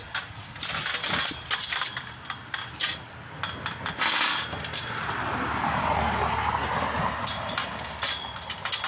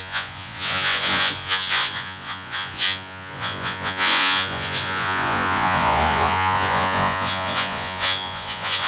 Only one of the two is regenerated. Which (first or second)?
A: second